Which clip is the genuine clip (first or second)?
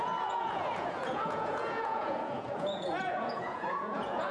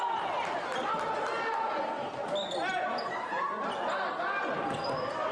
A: second